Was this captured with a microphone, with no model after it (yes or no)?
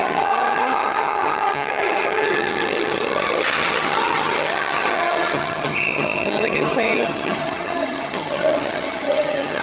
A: no